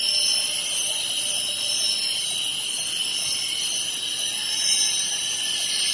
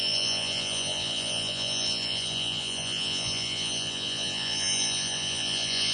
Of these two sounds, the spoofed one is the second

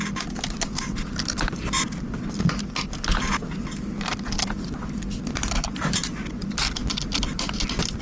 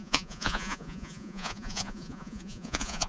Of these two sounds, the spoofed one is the second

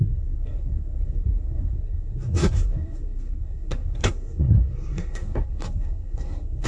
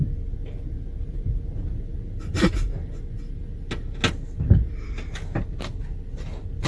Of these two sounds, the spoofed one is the first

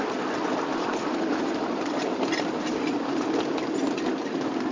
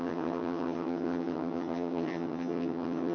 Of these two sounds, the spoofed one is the second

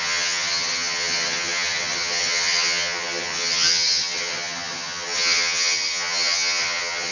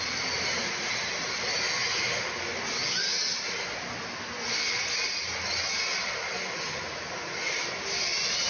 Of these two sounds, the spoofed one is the first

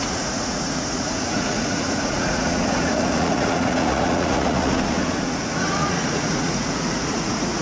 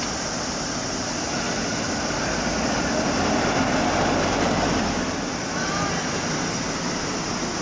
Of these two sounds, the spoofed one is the first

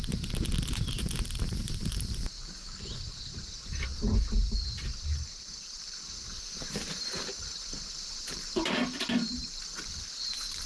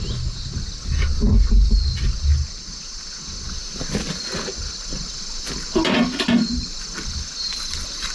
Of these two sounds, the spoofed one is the first